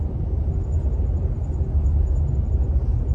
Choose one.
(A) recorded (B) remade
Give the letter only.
A